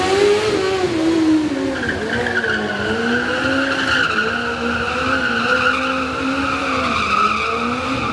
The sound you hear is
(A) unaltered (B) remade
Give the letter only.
A